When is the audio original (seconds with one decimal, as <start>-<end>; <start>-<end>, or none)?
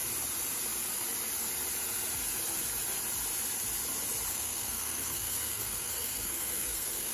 0.0-4.3